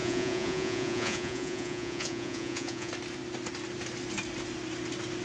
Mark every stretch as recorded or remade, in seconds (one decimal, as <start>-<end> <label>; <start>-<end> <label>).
0.0-2.9 remade; 2.9-5.2 recorded

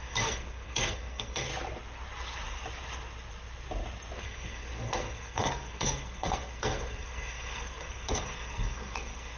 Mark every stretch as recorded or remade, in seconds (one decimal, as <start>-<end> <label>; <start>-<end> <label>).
0.0-1.5 remade; 1.5-4.2 recorded; 4.2-9.4 remade